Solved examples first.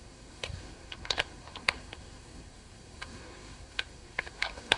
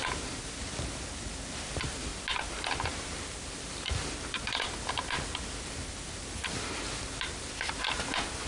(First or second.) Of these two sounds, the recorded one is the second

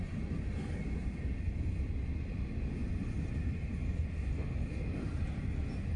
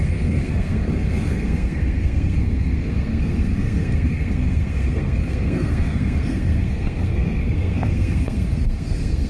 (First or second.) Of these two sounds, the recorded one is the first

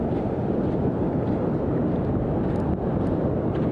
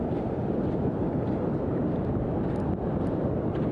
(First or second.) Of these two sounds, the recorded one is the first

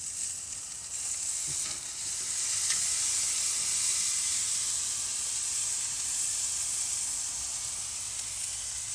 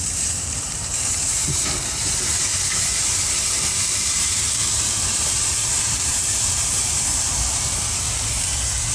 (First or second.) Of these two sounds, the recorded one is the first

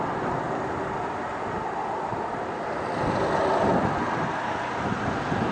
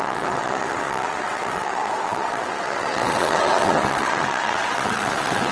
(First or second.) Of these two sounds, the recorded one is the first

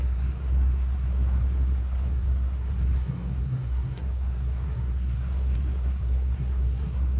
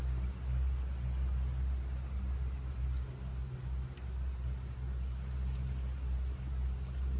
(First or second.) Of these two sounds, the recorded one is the second